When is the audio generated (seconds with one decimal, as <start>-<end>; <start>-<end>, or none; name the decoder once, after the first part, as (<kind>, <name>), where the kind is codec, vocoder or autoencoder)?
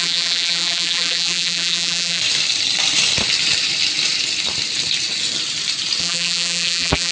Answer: 0.0-2.2 (vocoder, BigVGAN v2); 6.0-7.1